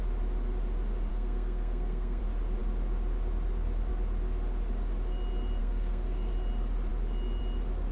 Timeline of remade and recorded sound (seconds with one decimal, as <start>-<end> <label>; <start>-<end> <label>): 0.0-1.1 recorded; 1.1-2.2 remade; 2.2-5.6 recorded; 5.6-6.3 remade; 6.3-7.9 recorded